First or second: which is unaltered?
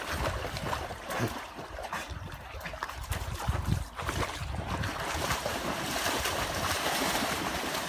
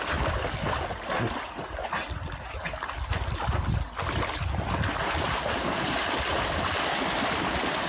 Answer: second